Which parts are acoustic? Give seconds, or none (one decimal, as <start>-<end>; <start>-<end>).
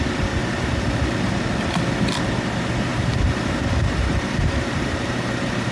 0.0-0.4; 1.3-2.9